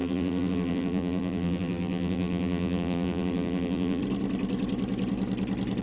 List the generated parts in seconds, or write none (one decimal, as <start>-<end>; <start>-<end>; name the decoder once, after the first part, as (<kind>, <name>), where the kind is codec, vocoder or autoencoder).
0.0-4.0 (vocoder, BigVGAN v2)